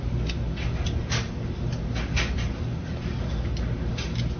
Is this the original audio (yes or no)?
yes